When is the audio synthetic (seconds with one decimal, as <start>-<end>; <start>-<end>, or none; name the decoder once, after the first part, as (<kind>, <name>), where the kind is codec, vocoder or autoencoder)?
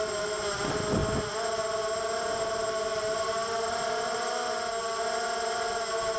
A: 2.9-4.3 (vocoder, BigVGAN v2)